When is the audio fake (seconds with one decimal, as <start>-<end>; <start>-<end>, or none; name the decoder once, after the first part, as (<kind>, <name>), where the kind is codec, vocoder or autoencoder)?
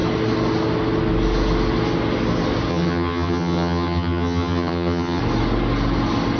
2.7-5.2 (vocoder, HiFi-GAN)